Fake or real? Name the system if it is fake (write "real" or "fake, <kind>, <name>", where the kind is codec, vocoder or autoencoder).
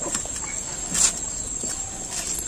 real